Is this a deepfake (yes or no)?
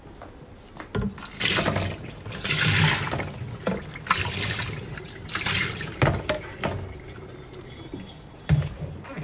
no